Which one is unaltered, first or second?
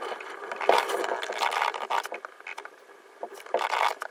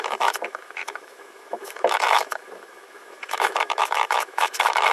first